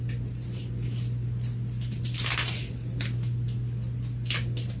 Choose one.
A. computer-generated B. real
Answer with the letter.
B